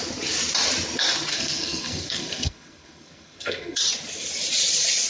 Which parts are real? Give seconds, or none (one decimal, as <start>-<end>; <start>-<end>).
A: 0.0-1.3; 3.8-5.1